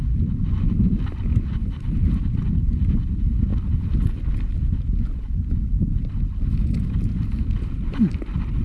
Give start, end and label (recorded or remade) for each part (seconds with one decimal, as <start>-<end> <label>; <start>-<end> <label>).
0.0-8.6 recorded